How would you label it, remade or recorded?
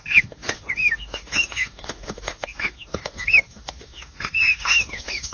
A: remade